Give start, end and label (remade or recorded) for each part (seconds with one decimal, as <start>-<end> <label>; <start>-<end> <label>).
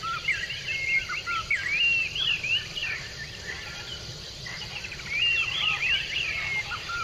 0.0-7.0 recorded